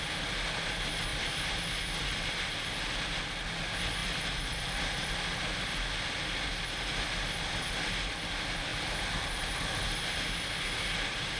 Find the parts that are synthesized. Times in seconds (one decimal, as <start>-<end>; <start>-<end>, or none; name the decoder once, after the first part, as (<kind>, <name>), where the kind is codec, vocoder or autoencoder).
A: 1.1-2.2 (vocoder, BigVGAN v2); 4.0-5.1; 8.7-10.2